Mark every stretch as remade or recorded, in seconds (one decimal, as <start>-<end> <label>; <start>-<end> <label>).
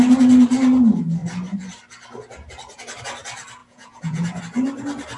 0.0-3.6 recorded; 3.6-4.4 remade; 4.4-5.2 recorded